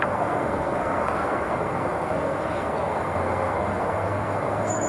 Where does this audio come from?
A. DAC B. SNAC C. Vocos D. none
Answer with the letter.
B